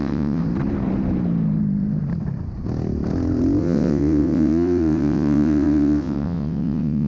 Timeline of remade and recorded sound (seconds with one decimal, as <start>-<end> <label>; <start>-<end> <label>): 0.0-0.4 remade; 0.4-3.6 recorded; 3.6-7.1 remade